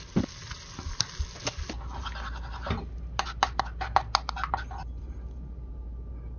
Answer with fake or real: real